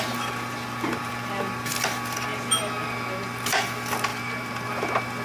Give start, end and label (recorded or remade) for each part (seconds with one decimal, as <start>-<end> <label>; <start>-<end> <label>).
0.0-4.1 recorded; 4.1-4.7 remade; 4.7-5.2 recorded